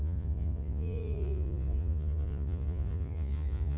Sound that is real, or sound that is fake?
fake